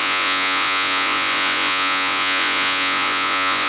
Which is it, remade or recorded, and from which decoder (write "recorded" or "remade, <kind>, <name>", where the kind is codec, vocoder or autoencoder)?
remade, vocoder, Vocos